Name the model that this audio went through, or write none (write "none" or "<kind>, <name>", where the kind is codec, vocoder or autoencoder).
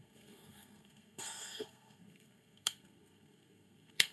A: codec, SNAC